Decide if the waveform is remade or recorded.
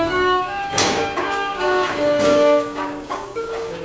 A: remade